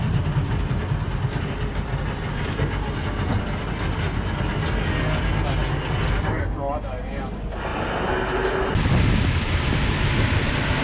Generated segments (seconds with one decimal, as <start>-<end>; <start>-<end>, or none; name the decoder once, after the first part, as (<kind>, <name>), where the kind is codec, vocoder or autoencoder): none